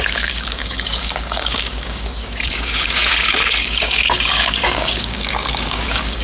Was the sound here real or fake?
fake